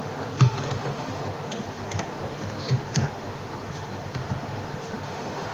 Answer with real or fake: fake